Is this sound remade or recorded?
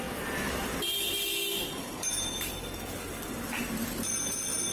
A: recorded